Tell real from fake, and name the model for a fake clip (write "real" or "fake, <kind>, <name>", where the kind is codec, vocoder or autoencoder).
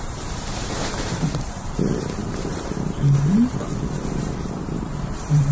fake, vocoder, BigVGAN v2